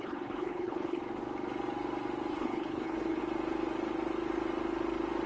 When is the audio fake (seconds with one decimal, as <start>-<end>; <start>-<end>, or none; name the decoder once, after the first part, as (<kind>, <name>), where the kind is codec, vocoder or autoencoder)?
0.0-1.0 (codec, HILCodec); 2.3-3.2